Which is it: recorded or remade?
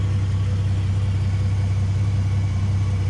recorded